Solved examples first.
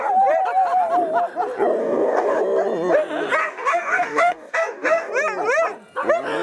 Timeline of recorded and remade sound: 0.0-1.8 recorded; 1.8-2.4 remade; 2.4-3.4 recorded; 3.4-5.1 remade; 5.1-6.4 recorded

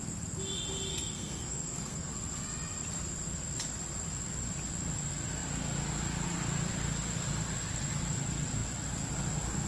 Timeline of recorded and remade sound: 0.0-0.9 recorded; 0.9-2.1 remade; 2.1-9.7 recorded

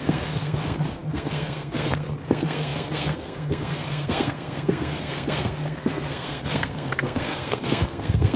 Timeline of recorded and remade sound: 0.0-8.4 remade

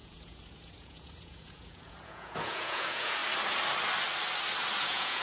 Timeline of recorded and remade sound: 0.0-3.2 remade; 3.2-4.8 recorded; 4.8-5.2 remade

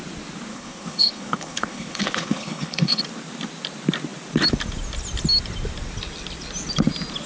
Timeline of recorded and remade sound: 0.0-0.5 recorded; 0.5-3.0 remade; 3.0-7.3 recorded